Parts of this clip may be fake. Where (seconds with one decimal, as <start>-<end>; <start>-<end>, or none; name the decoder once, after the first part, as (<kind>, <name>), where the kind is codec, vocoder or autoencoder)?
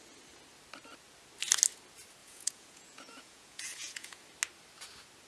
2.2-4.2 (vocoder, Vocos)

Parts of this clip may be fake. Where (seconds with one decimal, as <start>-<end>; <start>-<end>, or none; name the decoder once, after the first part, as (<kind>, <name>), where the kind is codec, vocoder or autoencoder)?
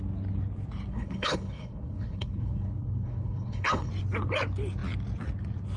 0.9-3.9 (codec, HILCodec)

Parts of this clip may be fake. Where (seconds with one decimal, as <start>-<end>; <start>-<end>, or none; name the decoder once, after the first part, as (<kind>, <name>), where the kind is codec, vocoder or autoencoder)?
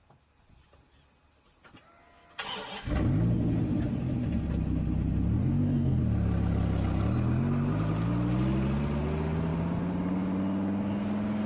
5.4-6.0 (codec, DAC)